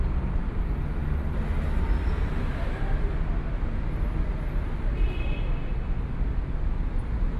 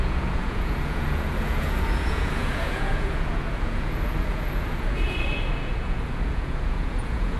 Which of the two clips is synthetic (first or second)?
second